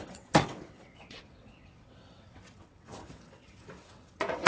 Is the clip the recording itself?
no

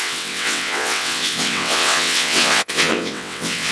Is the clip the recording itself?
no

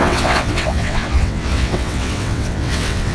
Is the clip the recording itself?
no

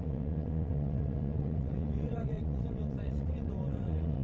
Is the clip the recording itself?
no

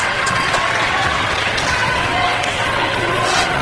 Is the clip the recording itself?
no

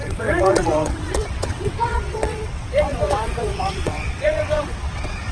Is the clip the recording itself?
no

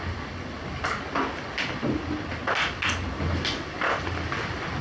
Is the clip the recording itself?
yes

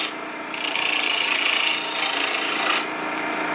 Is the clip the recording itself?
yes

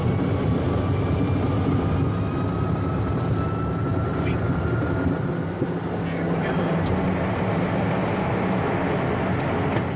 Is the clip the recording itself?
yes